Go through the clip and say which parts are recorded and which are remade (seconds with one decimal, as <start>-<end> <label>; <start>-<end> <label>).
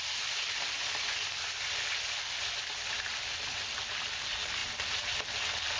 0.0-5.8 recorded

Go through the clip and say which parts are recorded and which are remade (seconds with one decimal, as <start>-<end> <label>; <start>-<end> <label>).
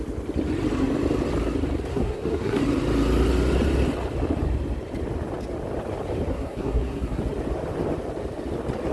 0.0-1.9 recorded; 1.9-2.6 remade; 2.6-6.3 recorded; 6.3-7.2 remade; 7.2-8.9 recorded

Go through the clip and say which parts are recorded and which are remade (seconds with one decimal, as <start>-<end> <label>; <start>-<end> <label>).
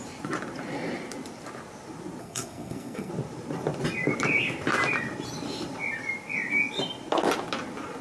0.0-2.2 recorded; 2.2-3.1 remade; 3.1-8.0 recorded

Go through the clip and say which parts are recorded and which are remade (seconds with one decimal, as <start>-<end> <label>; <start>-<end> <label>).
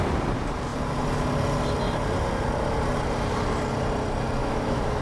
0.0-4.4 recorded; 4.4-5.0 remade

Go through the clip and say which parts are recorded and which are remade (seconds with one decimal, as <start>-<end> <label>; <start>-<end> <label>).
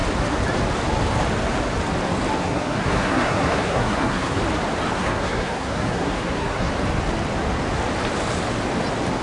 0.0-2.4 recorded; 2.4-4.4 remade; 4.4-5.0 recorded; 5.0-6.7 remade; 6.7-9.2 recorded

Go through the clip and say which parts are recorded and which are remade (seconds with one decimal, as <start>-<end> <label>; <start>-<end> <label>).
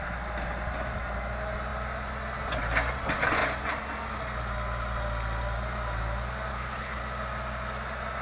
0.0-6.5 recorded; 6.5-7.0 remade; 7.0-8.2 recorded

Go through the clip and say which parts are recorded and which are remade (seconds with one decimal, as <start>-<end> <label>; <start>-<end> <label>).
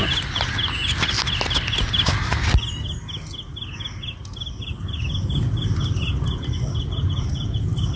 0.0-8.0 recorded